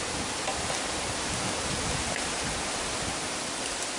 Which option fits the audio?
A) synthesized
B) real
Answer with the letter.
B